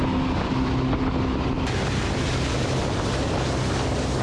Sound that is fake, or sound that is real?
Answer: real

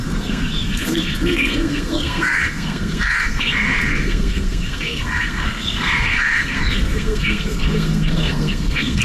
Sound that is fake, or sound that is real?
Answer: fake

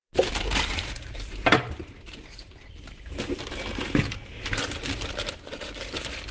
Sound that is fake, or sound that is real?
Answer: fake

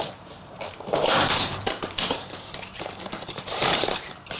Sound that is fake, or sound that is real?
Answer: fake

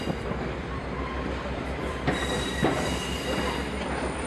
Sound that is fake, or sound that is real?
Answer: fake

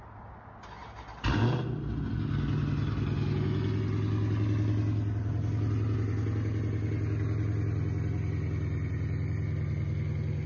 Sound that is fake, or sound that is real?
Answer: real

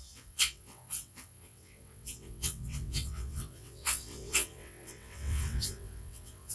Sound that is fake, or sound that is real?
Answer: fake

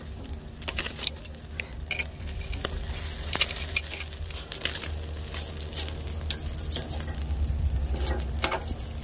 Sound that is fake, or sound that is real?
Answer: real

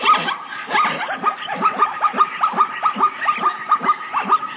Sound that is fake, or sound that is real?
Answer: real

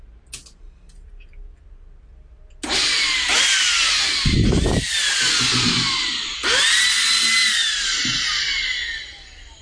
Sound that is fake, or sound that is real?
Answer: real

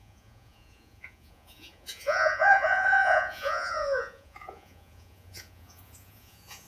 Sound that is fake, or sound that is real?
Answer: fake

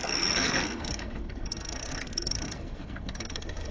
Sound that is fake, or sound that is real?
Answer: fake